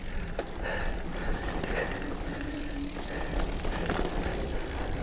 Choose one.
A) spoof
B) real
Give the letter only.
B